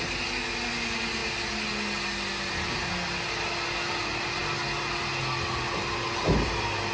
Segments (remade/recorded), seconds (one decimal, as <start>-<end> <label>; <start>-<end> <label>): 0.0-6.9 recorded